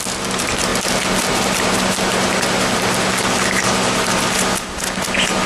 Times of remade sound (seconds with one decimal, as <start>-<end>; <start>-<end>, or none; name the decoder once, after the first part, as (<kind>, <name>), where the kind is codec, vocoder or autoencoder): none